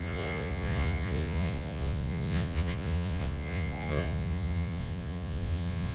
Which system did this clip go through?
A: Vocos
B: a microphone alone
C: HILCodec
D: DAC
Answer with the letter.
A